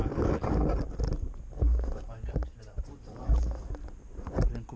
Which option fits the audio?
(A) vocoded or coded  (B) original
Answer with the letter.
B